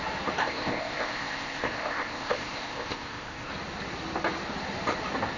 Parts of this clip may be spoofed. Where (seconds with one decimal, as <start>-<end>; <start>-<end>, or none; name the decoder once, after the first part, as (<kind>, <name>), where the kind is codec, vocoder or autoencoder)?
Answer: 0.4-3.5 (codec, ZipCodec)